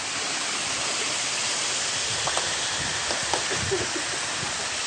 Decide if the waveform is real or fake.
fake